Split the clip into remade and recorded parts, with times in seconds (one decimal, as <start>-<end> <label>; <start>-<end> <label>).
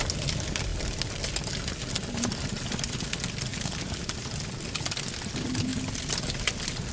0.0-2.0 recorded; 2.0-3.0 remade; 3.0-3.5 recorded; 3.5-4.2 remade; 4.2-6.9 recorded